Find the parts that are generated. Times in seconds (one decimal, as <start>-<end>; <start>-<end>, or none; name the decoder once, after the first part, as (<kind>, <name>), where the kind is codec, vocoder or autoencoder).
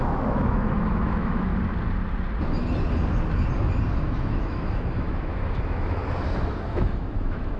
0.0-1.5 (autoencoder, DAC-VAE); 3.9-6.0; 6.7-7.6